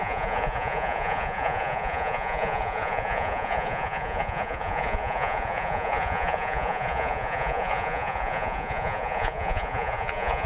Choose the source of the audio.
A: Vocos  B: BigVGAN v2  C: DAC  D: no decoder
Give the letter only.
A